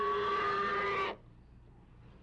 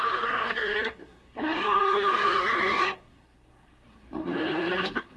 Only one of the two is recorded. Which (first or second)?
first